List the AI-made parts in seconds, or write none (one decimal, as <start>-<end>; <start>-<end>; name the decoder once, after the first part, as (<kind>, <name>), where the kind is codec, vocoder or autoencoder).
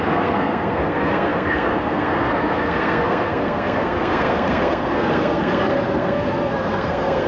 0.0-7.3 (codec, SNAC)